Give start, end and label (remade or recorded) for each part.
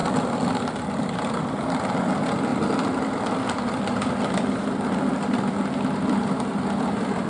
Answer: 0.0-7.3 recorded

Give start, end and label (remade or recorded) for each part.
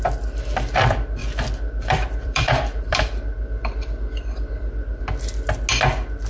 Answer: 0.0-1.2 recorded; 1.2-5.0 remade; 5.0-6.3 recorded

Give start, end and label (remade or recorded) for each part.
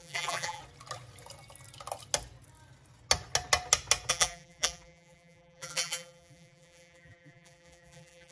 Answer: 0.0-0.6 remade; 0.6-4.1 recorded; 4.1-8.3 remade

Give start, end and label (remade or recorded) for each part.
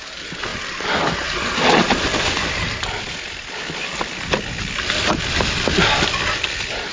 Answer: 0.0-6.9 recorded